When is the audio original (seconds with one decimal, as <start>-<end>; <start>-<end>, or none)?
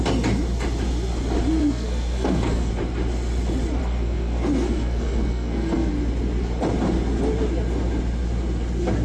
0.0-1.6; 2.7-3.8; 5.9-9.0